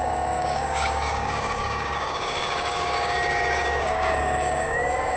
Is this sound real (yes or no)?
no